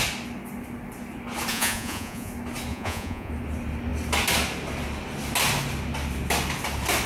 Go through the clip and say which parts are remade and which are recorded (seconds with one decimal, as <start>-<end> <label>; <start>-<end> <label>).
0.0-1.5 recorded; 1.5-2.3 remade; 2.3-2.7 recorded; 2.7-3.3 remade; 3.3-7.1 recorded